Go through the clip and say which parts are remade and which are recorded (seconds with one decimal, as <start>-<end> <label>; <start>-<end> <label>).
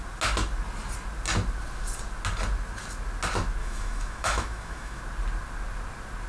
0.0-3.6 recorded; 3.6-5.0 remade; 5.0-6.3 recorded